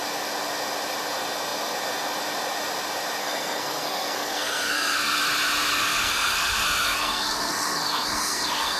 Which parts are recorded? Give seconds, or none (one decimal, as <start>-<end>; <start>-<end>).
0.0-3.2; 5.2-5.7